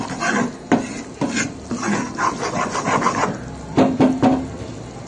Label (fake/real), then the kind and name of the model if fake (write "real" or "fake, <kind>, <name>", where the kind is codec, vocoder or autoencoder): real